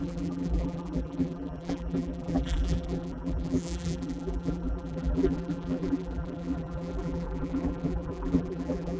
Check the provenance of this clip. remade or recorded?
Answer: remade